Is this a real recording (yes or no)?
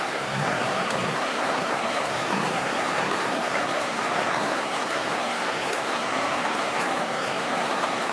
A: no